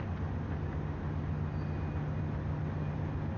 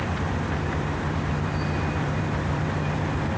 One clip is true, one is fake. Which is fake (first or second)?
second